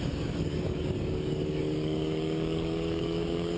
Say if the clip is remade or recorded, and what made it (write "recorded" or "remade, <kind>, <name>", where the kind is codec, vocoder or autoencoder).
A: remade, codec, DAC